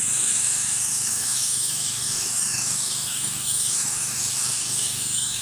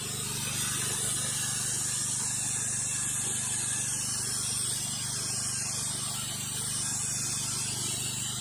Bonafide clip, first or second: second